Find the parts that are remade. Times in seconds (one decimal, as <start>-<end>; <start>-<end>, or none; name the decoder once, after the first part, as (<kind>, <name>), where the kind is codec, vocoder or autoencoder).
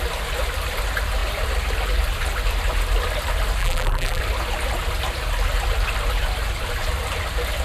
3.6-4.2 (vocoder, BigVGAN v2)